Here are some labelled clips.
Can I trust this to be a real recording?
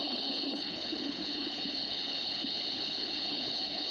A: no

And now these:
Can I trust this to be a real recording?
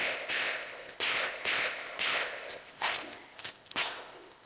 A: no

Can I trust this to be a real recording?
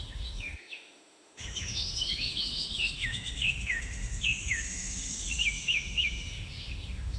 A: no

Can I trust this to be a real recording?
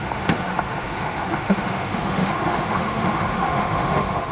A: no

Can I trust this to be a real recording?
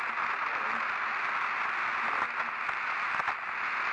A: yes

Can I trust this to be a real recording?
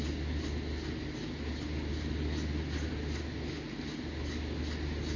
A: yes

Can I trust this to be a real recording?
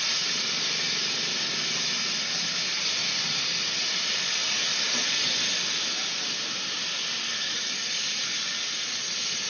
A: yes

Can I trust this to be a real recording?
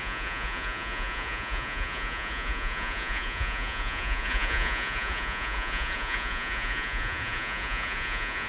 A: no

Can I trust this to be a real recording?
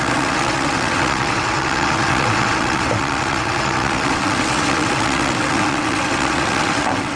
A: no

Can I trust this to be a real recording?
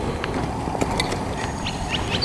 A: yes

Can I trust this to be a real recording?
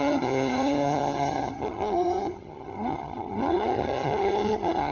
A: no